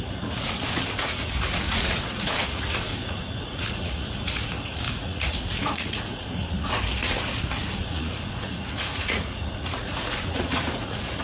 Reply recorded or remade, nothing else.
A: remade